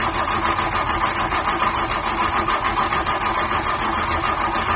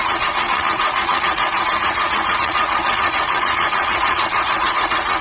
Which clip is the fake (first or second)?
second